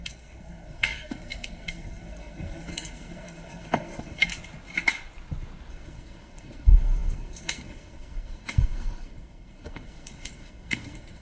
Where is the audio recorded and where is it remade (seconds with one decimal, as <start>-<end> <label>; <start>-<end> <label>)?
0.0-4.3 remade; 4.3-5.7 recorded; 5.7-11.2 remade